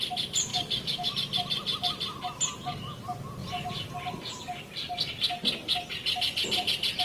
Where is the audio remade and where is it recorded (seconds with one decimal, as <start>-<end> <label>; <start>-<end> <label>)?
0.0-0.5 recorded; 0.5-1.1 remade; 1.1-7.0 recorded